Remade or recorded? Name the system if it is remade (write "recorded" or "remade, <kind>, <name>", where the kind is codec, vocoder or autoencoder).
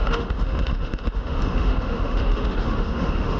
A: remade, autoencoder, DAC-VAE